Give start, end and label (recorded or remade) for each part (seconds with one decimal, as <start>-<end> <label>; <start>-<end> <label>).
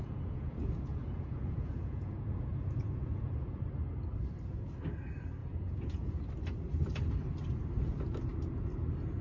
0.0-3.6 remade; 3.6-5.4 recorded; 5.4-6.2 remade; 6.2-9.2 recorded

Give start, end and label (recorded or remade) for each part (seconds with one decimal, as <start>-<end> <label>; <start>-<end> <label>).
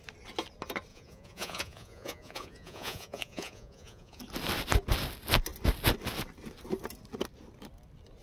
0.0-0.9 recorded; 0.9-4.2 remade; 4.2-8.2 recorded